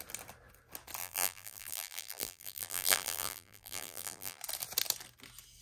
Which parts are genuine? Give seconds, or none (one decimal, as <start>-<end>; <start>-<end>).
0.0-1.0; 4.4-5.6